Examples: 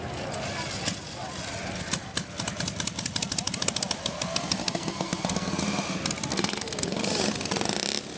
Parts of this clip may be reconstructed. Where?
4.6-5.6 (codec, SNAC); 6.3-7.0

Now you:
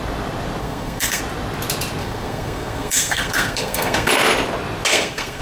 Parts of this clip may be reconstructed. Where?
0.6-1.2 (codec, SNAC); 2.0-4.1; 4.9-5.4